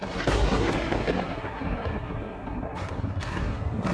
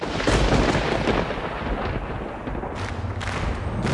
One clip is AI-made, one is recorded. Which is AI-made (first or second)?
first